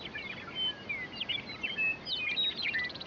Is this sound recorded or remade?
recorded